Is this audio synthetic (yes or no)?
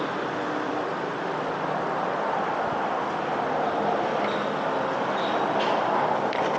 no